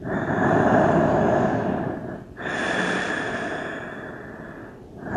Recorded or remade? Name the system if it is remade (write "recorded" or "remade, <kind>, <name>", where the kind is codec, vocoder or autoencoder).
recorded